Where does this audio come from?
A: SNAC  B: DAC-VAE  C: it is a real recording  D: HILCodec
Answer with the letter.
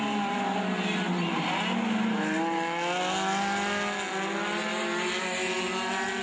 C